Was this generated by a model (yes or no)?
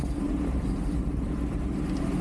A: no